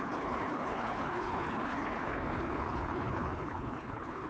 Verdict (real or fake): fake